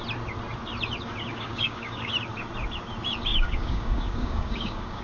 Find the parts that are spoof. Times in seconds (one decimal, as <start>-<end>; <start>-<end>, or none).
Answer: 1.3-2.1; 3.3-5.0